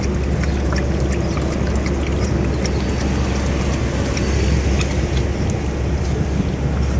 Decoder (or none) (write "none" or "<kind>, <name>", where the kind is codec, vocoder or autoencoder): none